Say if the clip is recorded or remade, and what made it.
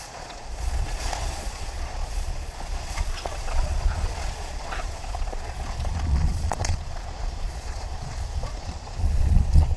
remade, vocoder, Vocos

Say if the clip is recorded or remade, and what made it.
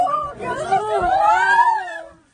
remade, vocoder, Vocos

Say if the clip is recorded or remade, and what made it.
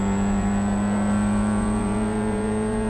remade, vocoder, Vocos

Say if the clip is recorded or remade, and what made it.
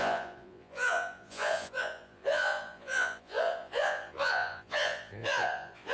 remade, vocoder, Vocos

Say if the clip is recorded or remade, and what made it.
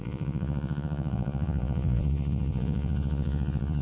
remade, vocoder, Vocos